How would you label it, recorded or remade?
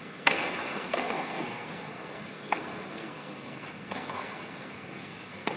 remade